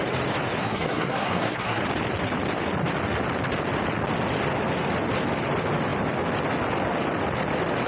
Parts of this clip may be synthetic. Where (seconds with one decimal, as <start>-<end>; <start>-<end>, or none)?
0.6-1.8